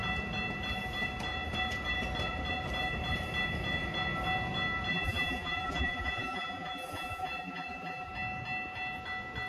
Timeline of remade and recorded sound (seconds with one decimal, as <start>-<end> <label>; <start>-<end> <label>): 0.0-4.9 recorded; 4.9-8.1 remade; 8.1-9.5 recorded